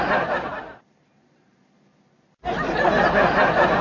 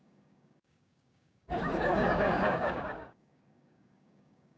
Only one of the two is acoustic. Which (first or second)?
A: first